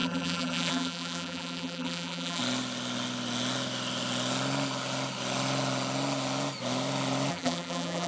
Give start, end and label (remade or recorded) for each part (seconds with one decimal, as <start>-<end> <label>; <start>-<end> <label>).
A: 0.0-2.4 remade; 2.4-7.3 recorded; 7.3-8.1 remade